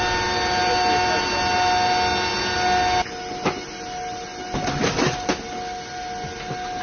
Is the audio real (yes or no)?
yes